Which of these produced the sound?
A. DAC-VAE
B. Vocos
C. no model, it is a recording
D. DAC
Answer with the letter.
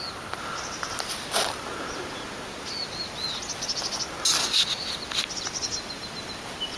C